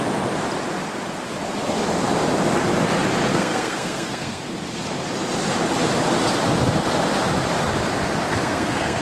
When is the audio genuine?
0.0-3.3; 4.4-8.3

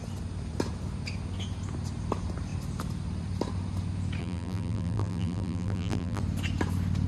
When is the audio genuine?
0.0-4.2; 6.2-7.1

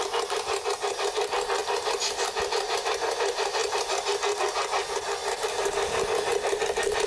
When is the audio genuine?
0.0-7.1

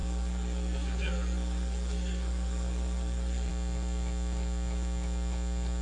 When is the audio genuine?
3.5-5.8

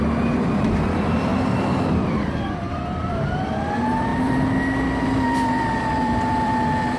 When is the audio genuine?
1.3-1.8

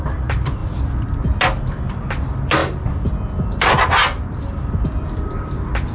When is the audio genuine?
0.0-5.9

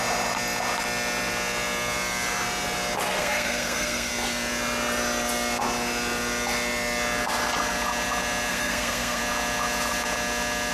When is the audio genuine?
0.0-3.2; 4.1-8.5; 9.2-10.7

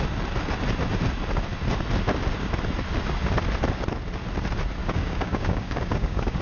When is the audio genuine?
0.0-4.8